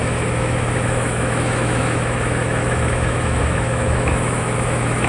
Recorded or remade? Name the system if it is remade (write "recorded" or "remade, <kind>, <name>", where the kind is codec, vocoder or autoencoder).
remade, autoencoder, DAC-VAE